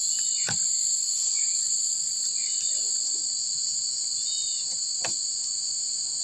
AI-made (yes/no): no